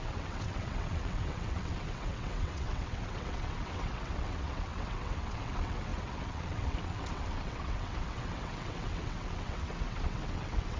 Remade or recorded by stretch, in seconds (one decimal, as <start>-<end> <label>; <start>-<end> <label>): 0.0-10.8 remade